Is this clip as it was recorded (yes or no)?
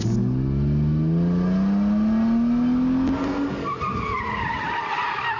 yes